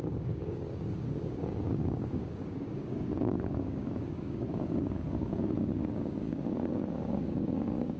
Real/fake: fake